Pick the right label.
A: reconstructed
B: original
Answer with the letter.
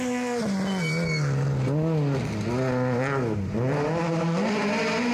B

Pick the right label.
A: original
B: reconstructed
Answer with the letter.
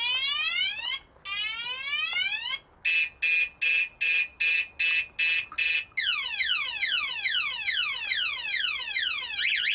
A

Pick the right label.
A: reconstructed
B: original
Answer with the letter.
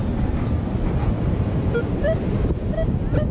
B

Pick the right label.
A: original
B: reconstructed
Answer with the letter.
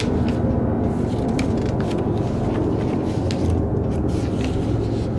A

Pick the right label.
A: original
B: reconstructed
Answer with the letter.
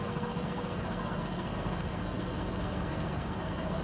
B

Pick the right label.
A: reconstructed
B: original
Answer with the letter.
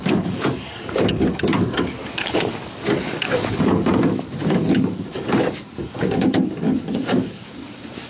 A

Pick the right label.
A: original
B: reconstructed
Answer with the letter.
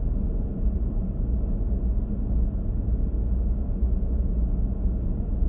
A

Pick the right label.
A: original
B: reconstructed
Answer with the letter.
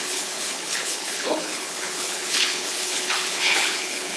B